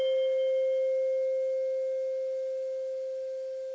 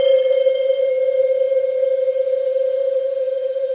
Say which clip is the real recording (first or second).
first